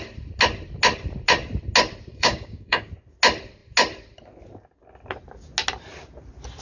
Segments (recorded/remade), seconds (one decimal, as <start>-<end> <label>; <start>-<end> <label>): 0.0-2.1 recorded; 2.1-2.9 remade; 2.9-6.6 recorded